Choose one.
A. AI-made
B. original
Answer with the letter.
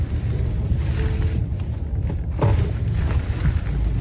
B